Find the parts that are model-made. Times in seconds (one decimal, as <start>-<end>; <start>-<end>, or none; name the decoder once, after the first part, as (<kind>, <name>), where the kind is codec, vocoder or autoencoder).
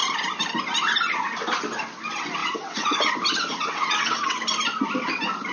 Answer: 2.4-3.1 (vocoder, WaveNeXt); 3.5-4.4